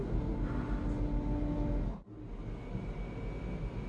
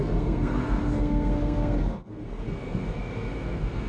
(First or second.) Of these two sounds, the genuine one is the first